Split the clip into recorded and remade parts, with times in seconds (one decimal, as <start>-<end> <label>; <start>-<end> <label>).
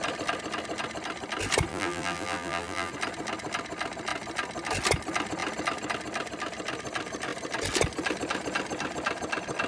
0.0-1.7 recorded; 1.7-2.9 remade; 2.9-9.7 recorded